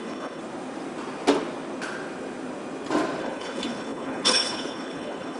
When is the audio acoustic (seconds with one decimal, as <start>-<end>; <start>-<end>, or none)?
0.4-3.2